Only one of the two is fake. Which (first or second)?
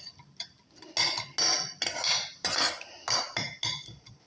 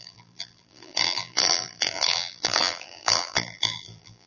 second